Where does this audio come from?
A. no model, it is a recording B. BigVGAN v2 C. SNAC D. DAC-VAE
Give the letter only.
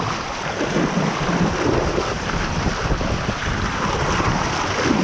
A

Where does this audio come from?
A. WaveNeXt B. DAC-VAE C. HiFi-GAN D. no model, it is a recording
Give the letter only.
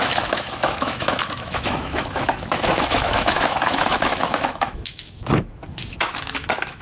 B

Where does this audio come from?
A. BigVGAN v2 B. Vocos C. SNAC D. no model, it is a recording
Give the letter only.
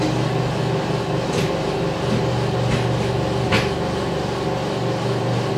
D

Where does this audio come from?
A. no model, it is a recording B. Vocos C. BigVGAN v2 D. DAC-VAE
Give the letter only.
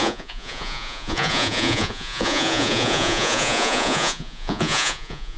B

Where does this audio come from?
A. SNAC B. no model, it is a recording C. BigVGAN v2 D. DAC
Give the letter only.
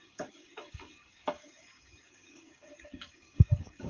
D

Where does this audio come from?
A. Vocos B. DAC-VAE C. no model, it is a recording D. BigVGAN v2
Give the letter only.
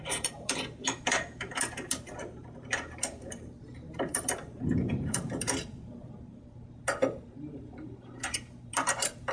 D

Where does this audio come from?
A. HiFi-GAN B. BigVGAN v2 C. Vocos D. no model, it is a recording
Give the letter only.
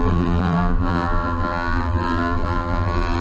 B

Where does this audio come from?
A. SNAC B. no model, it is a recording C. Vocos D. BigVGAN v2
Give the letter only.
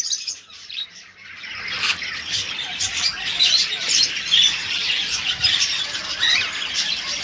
D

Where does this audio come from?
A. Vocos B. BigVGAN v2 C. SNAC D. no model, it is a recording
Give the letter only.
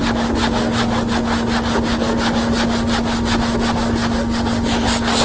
D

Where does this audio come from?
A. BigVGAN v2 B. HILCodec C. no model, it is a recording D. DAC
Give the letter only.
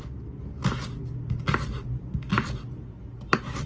C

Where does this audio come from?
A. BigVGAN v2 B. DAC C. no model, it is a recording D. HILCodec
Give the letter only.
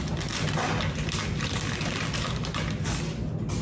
C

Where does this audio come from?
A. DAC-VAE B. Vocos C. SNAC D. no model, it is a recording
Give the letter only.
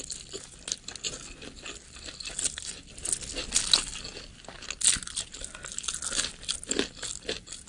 D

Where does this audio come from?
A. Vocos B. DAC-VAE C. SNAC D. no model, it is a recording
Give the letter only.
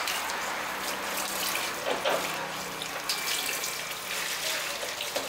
D